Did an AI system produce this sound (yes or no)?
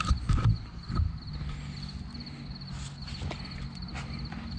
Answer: no